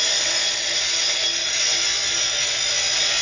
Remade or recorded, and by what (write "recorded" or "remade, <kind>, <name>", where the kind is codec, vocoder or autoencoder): recorded